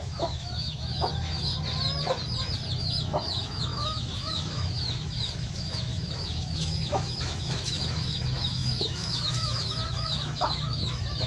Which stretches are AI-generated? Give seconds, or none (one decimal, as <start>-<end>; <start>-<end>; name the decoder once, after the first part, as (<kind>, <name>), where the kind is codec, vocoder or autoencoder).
0.0-1.5 (autoencoder, DAC-VAE); 2.8-11.3